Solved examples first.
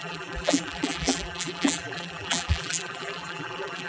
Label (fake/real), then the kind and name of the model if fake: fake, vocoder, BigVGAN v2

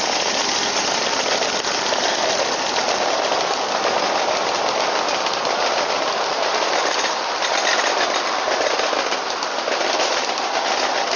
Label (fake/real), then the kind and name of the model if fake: real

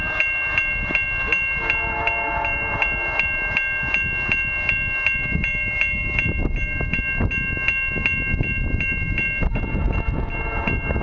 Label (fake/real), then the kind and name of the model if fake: real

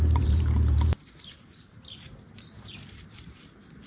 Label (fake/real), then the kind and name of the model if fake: fake, vocoder, BigVGAN v2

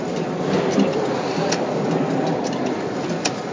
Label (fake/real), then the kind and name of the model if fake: real